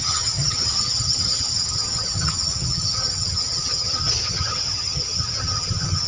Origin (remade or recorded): remade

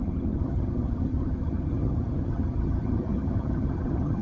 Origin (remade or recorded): remade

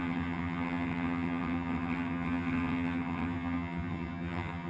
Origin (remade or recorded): remade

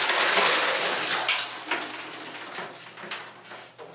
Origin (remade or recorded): recorded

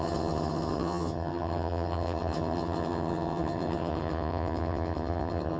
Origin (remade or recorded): remade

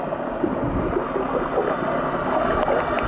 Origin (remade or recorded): recorded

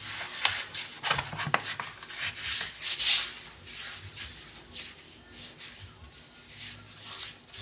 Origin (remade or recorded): recorded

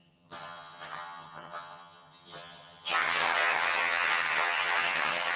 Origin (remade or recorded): remade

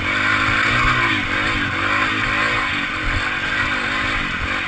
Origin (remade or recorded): recorded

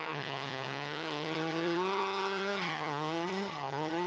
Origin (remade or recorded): remade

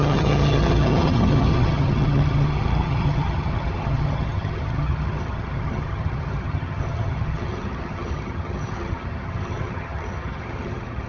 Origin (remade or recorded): remade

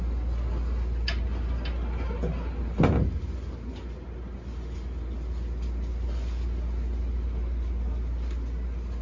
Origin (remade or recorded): recorded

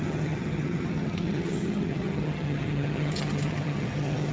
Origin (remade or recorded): remade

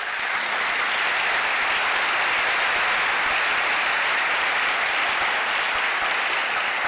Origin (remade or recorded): recorded